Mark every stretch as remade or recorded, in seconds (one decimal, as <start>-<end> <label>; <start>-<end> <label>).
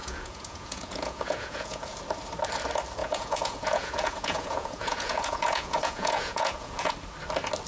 0.0-2.0 remade; 2.0-3.0 recorded; 3.0-6.9 remade; 6.9-7.7 recorded